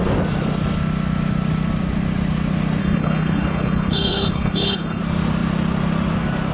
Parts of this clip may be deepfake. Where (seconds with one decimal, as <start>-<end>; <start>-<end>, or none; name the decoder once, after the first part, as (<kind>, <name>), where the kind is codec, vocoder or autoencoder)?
2.8-5.0 (codec, HILCodec)